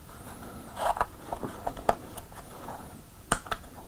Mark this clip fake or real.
fake